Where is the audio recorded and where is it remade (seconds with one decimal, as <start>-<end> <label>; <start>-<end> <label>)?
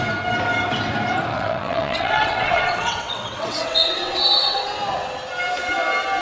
0.0-1.3 recorded; 1.3-4.6 remade; 4.6-6.2 recorded